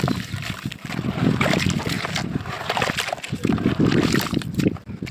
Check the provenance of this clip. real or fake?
fake